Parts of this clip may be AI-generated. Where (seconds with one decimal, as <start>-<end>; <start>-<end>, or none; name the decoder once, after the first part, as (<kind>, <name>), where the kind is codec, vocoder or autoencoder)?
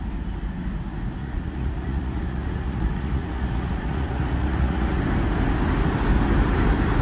1.2-5.0 (vocoder, Vocos)